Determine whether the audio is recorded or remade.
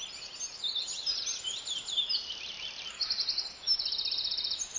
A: recorded